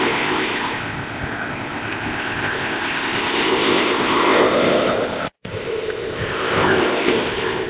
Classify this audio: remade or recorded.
remade